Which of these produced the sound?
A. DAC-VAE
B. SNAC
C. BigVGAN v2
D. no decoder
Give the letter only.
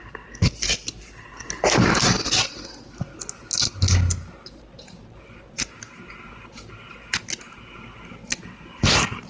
D